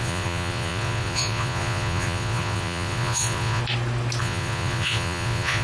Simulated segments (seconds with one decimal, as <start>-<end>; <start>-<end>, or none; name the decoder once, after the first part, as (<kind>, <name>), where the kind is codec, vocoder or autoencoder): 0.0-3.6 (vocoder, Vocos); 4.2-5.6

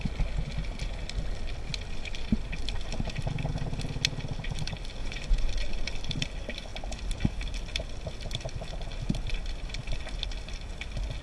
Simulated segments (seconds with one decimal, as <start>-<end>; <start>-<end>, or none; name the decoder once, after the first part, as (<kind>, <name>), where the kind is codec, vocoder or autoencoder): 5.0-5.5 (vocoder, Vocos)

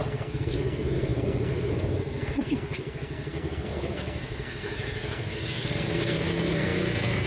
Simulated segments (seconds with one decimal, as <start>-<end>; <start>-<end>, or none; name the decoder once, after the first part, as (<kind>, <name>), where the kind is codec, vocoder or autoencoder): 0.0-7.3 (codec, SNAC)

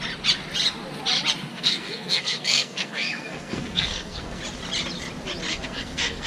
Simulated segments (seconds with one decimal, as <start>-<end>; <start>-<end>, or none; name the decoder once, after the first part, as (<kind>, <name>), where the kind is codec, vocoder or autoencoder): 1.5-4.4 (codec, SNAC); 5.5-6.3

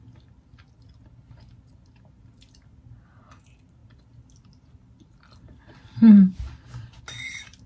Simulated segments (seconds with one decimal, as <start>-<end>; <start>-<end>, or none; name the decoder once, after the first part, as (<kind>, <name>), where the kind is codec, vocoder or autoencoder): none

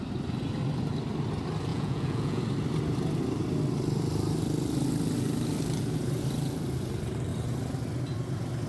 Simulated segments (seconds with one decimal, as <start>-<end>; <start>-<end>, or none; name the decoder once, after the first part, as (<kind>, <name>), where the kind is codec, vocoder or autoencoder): 1.7-2.4 (vocoder, Vocos)

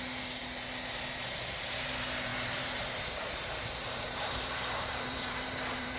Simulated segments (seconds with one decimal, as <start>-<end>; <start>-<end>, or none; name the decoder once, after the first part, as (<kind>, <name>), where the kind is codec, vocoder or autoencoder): 2.3-6.0 (vocoder, BigVGAN v2)